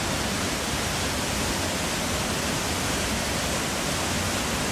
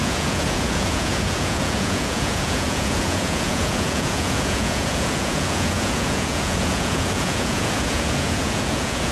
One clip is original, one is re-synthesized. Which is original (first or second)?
first